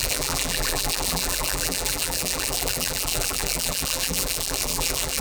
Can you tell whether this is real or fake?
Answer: fake